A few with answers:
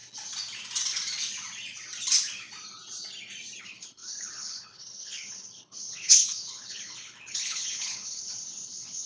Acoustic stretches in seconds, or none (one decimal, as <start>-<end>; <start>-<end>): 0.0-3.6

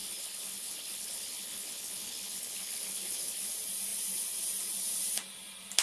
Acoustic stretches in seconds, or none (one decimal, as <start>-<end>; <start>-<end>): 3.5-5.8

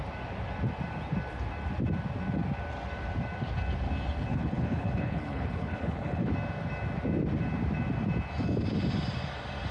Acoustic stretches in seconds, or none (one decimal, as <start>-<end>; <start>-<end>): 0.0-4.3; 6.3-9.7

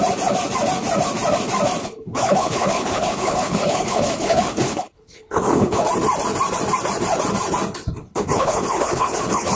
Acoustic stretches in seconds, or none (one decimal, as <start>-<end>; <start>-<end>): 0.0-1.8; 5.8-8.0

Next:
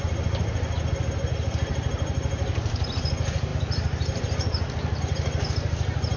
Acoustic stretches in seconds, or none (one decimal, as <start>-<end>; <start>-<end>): 0.0-6.2